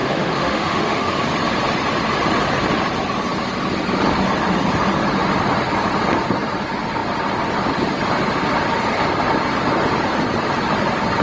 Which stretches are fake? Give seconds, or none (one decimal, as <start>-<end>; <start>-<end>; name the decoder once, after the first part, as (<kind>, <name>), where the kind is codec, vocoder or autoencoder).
0.0-1.1 (autoencoder, DAC-VAE)